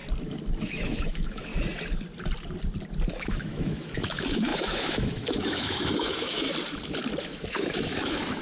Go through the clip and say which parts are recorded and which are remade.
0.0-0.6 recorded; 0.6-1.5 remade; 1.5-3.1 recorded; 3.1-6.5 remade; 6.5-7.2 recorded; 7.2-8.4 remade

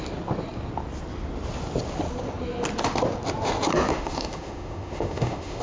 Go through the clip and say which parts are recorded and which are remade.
0.0-3.9 recorded; 3.9-5.6 remade

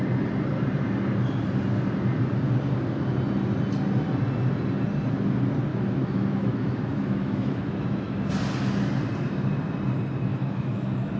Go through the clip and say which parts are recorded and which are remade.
0.0-5.7 recorded; 5.7-8.3 remade; 8.3-10.3 recorded; 10.3-11.2 remade

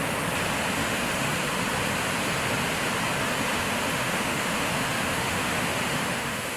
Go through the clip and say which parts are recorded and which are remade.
0.0-0.8 recorded; 0.8-1.3 remade; 1.3-3.5 recorded; 3.5-6.6 remade

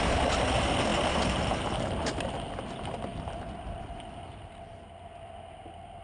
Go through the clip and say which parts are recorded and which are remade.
0.0-6.0 recorded

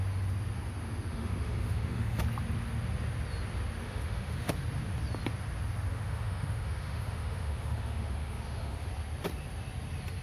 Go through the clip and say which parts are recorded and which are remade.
0.0-1.1 recorded; 1.1-2.2 remade; 2.2-3.8 recorded; 3.8-4.5 remade; 4.5-5.9 recorded; 5.9-8.9 remade; 8.9-10.2 recorded

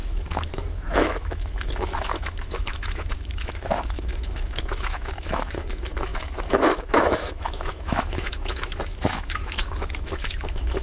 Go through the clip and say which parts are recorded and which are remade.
0.0-10.8 remade

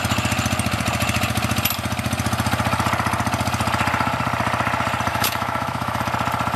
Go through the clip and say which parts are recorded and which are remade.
0.0-5.1 recorded; 5.1-6.0 remade; 6.0-6.6 recorded